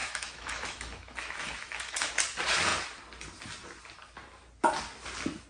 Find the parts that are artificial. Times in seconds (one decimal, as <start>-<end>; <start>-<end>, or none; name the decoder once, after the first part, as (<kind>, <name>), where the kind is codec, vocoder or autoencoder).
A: 0.0-2.1 (autoencoder, DAC-VAE)